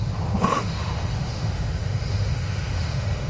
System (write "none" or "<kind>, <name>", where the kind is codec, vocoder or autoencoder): autoencoder, DAC-VAE